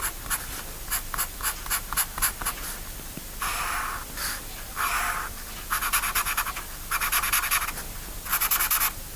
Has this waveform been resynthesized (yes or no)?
no